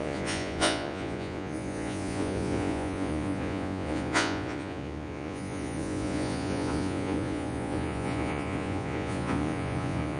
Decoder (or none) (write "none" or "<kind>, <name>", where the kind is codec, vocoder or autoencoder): vocoder, Vocos